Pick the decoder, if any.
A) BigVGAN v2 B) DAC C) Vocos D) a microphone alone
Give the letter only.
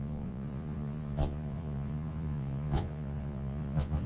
C